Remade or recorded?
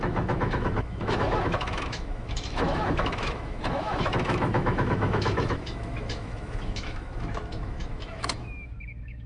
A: remade